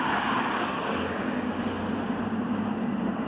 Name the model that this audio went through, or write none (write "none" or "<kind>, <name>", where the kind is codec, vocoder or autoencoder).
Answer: none